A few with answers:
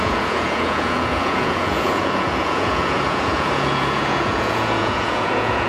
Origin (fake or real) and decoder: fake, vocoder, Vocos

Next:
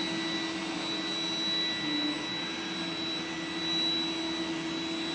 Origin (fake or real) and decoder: real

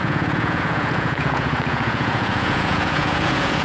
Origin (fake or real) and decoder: fake, vocoder, Vocos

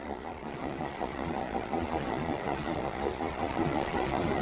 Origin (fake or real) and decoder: fake, vocoder, Vocos